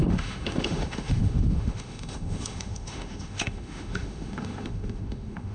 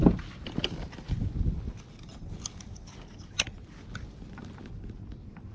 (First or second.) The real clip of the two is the second